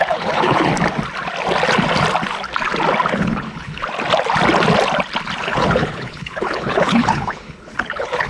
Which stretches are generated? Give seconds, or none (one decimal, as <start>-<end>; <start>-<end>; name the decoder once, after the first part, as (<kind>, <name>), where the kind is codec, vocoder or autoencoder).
0.0-0.7 (codec, HILCodec); 3.1-3.8; 5.4-8.3